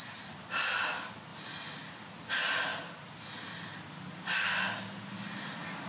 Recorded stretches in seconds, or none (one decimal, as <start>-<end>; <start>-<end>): 0.0-5.9